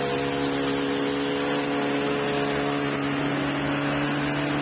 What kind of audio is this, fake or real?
real